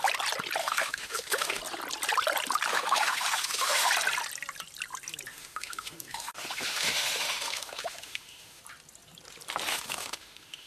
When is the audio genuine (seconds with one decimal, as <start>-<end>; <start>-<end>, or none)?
0.0-0.6; 1.6-2.7; 3.9-5.3; 8.6-9.7